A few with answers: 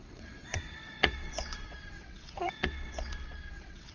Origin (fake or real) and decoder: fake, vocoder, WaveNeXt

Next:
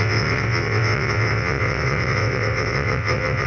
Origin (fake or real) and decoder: fake, vocoder, WaveNeXt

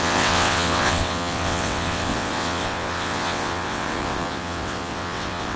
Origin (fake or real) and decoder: fake, vocoder, WaveNeXt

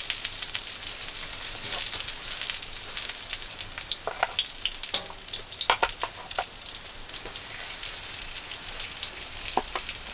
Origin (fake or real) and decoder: real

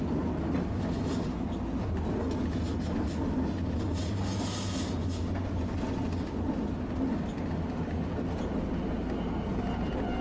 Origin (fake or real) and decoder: real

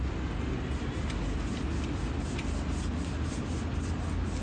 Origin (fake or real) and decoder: real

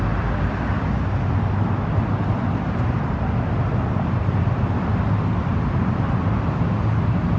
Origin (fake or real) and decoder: real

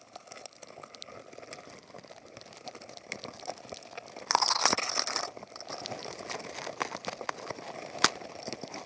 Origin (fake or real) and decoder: real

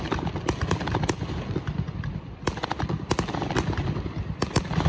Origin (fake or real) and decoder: real